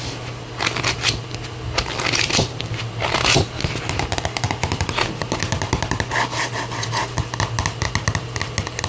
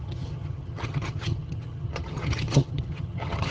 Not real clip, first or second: second